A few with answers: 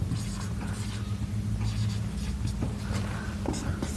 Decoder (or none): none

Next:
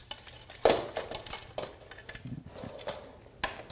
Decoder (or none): none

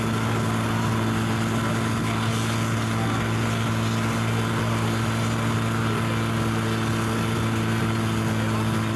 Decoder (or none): none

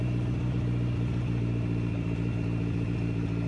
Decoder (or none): none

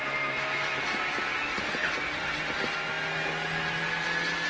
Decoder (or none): none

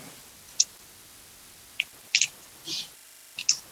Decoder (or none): none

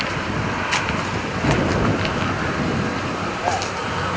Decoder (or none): none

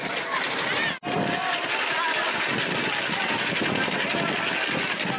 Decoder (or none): none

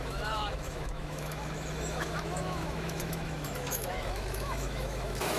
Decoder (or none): autoencoder, DAC-VAE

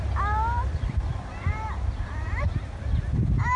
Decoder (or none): none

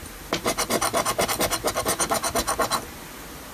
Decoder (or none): none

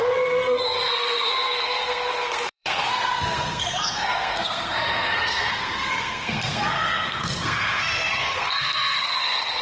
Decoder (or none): codec, SNAC